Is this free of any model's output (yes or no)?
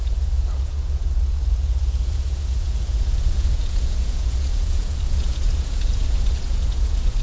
no